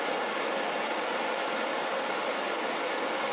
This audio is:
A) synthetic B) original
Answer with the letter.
B